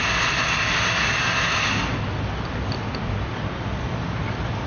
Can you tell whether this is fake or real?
real